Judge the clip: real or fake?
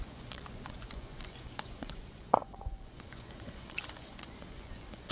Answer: fake